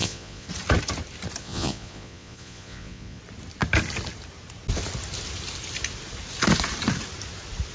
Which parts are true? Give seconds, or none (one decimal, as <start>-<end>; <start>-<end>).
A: 0.5-1.4; 3.2-7.7